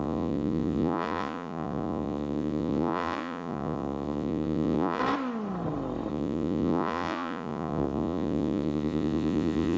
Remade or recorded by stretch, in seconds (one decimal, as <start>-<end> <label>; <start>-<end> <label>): 0.0-5.0 remade; 5.0-6.1 recorded; 6.1-9.8 remade